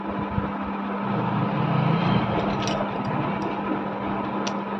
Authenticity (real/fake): real